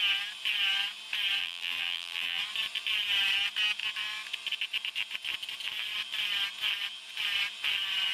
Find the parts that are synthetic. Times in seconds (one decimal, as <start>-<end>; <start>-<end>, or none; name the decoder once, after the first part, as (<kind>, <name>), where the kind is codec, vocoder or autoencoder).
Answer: 1.4-2.4 (vocoder, BigVGAN v2)